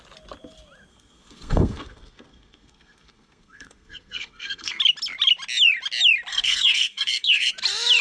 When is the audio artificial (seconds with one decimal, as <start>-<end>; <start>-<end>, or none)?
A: 0.9-4.8; 6.3-7.5